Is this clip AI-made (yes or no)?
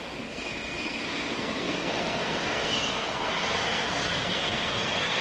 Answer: yes